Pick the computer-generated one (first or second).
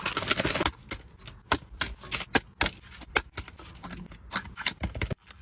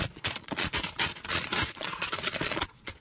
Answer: second